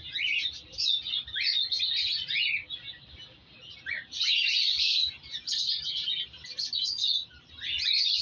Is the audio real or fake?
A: real